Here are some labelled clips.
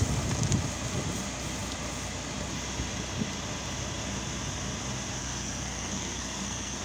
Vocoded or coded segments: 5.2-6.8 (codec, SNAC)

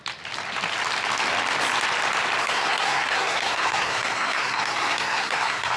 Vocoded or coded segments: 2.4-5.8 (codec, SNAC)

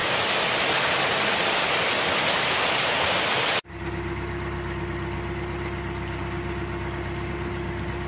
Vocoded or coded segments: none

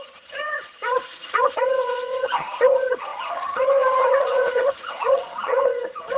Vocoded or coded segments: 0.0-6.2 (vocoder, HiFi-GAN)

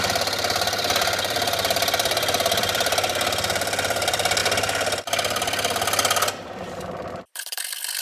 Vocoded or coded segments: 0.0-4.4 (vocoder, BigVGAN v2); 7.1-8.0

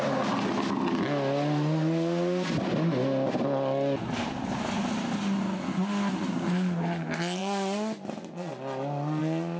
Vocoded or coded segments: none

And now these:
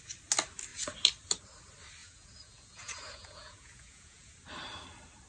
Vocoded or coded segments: 2.0-4.3 (vocoder, Vocos)